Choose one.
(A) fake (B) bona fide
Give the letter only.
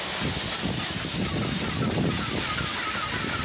B